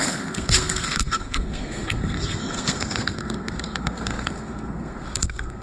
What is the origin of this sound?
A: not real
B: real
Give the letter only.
A